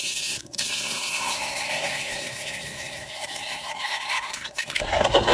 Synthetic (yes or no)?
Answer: yes